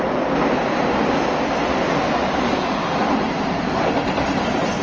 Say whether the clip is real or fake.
real